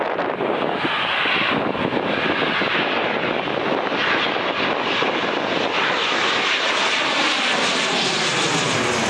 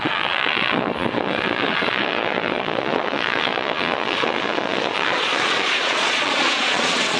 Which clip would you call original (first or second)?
first